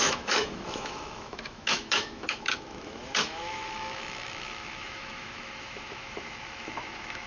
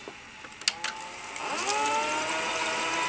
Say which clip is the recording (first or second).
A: second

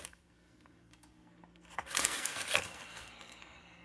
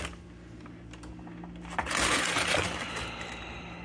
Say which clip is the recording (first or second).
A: second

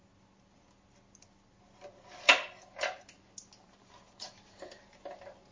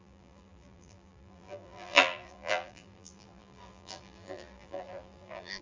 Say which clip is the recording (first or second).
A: first